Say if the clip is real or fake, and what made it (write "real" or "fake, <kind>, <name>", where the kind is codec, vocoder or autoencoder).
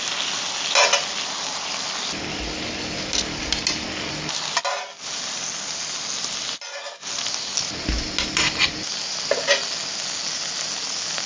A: real